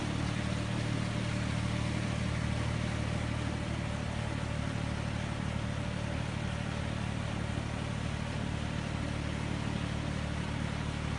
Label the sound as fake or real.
real